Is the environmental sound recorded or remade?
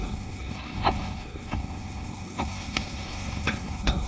remade